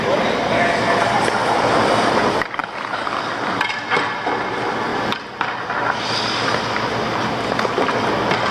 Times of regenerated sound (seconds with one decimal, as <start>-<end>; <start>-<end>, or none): 1.4-2.2; 2.6-3.6; 4.9-7.5

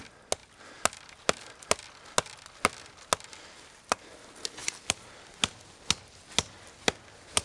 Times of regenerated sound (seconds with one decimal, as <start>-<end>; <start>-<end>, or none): 4.6-5.2

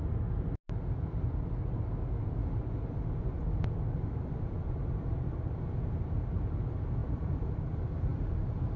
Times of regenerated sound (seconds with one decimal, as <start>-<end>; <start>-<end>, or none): 2.4-5.5; 7.0-7.7

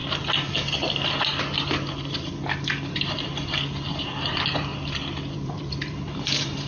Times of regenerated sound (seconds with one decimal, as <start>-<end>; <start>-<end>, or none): 4.0-4.7; 5.3-6.7

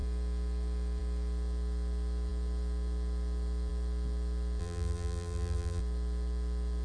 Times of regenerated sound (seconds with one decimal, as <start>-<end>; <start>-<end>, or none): 4.6-5.8